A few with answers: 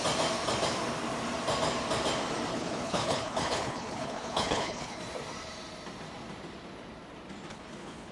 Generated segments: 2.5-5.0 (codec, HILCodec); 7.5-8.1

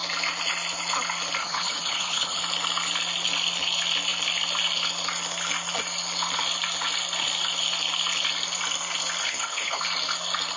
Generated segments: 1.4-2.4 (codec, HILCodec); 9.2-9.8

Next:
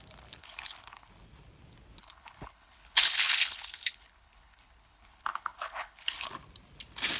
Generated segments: 0.4-1.1 (codec, HILCodec); 2.0-6.3

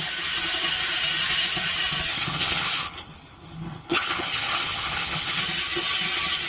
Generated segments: 2.1-5.4 (codec, HILCodec)

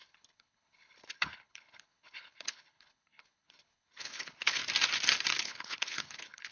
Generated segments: 0.0-4.6 (codec, HILCodec); 5.4-6.5

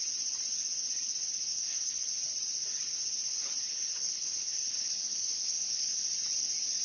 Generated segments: 1.5-2.1 (codec, HILCodec); 3.7-6.0